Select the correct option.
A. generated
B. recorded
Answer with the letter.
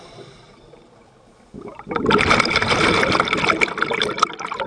B